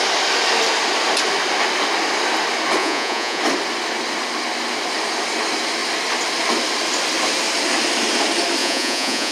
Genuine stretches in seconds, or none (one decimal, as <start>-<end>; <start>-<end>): 0.0-2.8; 3.4-8.6

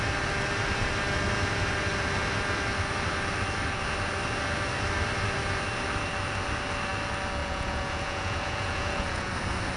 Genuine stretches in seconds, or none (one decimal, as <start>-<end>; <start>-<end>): 0.0-7.4; 9.3-9.8

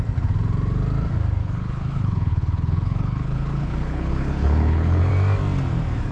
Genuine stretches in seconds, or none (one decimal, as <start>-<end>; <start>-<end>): 0.0-1.4; 5.1-6.1

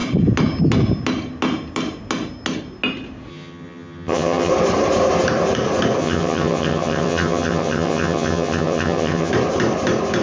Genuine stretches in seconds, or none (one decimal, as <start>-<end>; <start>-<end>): 0.0-3.3; 4.5-6.0; 9.3-10.2

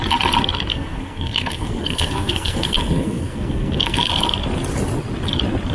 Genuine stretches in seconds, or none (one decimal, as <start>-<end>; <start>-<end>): 0.0-0.7; 4.1-5.7

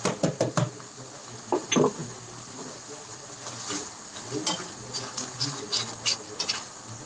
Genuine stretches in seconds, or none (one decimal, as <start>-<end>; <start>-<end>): 0.0-7.1